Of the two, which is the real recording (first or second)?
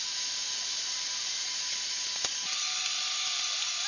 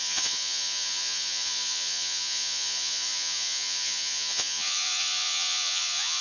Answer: first